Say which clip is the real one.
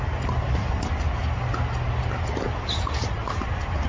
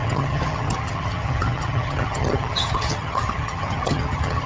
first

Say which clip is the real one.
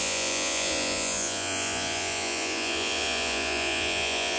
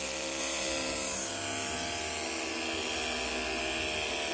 second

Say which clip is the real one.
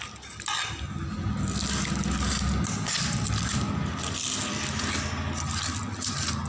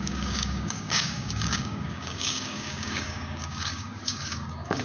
first